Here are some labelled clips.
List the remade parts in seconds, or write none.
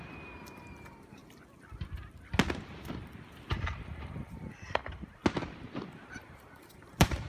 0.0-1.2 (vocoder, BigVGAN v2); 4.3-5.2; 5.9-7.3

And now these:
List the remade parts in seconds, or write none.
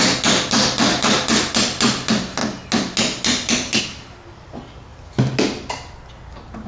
none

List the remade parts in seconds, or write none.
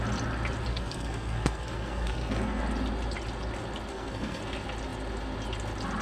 0.7-2.6 (codec, SNAC); 3.9-4.4